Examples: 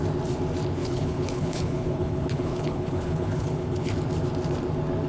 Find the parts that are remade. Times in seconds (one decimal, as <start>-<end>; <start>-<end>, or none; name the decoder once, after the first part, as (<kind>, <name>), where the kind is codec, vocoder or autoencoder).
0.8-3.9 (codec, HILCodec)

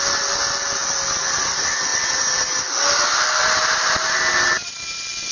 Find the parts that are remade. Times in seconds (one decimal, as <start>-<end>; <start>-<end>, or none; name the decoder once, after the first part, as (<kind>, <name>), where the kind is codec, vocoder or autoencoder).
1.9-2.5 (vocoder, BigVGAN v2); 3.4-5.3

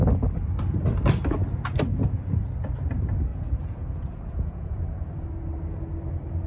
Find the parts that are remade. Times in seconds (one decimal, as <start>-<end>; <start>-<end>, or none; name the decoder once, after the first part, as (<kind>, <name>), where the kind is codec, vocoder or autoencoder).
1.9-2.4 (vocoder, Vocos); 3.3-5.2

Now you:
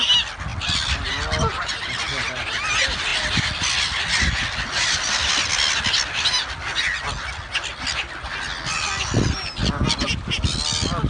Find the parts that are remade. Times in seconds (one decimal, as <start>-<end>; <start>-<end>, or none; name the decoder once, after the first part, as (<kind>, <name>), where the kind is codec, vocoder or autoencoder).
none

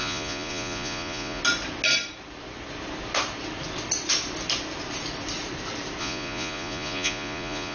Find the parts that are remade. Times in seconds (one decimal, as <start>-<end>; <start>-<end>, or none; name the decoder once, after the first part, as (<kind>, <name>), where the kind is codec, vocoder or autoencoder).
0.0-1.4 (vocoder, Vocos); 6.0-7.7

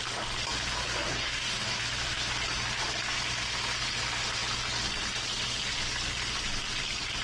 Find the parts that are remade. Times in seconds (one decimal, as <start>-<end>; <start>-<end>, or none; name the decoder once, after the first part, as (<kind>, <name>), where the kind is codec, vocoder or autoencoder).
1.1-1.8 (codec, DAC)